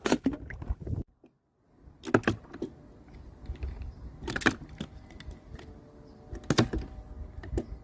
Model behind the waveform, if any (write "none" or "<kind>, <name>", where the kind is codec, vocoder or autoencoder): none